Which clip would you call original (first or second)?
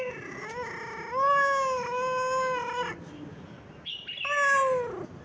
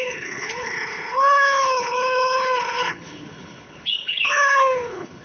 first